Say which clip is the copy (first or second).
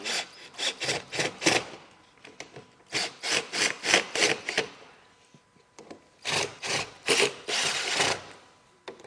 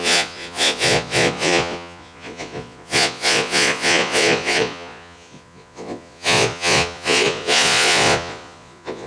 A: second